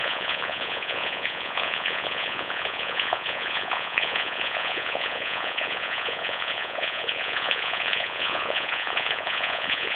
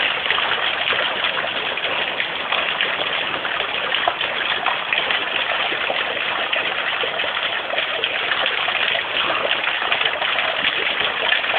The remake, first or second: first